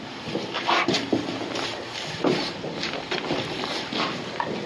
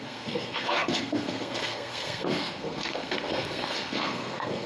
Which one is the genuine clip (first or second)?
first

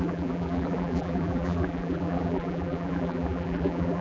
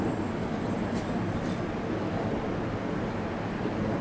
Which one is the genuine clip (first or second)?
second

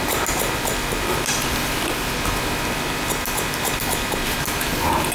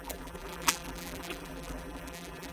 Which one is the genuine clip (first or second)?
first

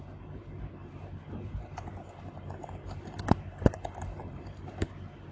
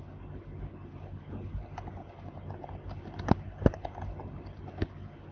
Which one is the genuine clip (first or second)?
second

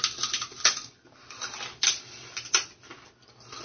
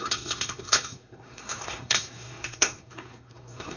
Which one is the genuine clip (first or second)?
first